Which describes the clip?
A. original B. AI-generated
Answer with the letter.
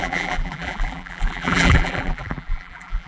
B